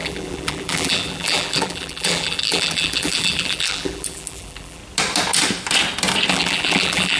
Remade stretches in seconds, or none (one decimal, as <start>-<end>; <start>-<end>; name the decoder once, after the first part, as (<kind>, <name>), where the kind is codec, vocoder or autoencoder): 0.0-4.8 (vocoder, BigVGAN v2); 6.3-7.2